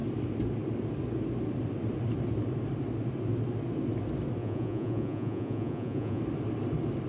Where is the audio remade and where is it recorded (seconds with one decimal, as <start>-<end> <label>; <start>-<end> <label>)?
0.0-4.4 recorded; 4.4-6.2 remade; 6.2-7.1 recorded